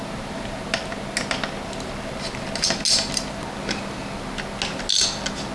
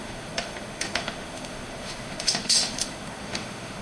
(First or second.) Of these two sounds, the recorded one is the first